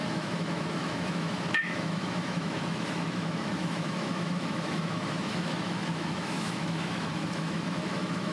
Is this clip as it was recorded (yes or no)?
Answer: no